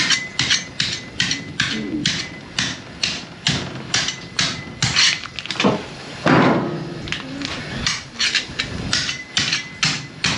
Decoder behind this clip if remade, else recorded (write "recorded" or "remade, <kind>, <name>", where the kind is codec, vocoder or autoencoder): recorded